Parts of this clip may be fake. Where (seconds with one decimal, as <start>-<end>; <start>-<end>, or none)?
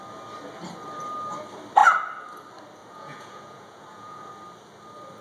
2.8-4.3